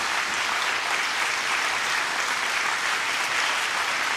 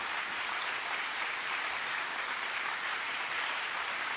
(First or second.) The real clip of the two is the first